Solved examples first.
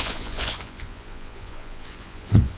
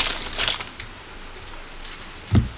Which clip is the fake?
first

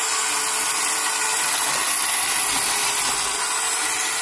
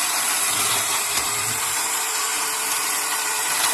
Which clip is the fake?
second